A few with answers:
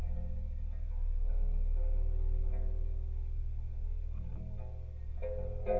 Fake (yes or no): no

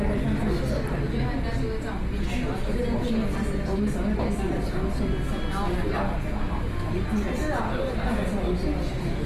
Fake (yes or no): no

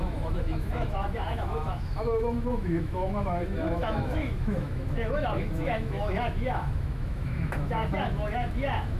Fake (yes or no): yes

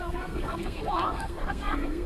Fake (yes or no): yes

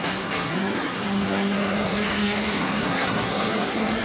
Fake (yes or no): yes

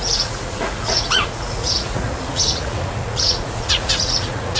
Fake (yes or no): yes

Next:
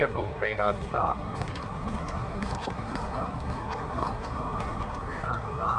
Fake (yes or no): yes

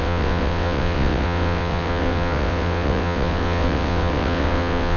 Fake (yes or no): yes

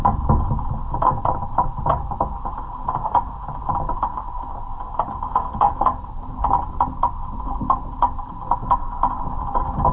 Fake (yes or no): no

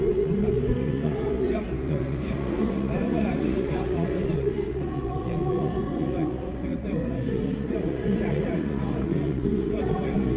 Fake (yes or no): yes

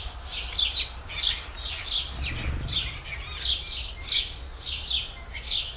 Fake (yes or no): no